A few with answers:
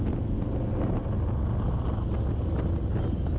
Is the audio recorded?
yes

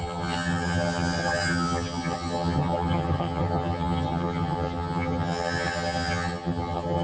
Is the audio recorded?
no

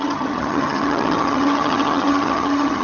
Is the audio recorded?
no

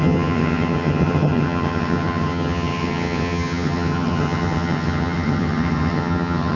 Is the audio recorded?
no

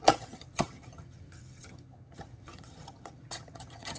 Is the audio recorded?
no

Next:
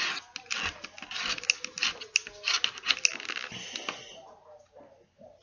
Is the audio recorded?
yes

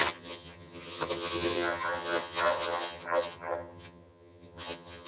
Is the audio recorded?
no